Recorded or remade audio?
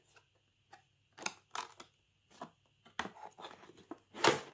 recorded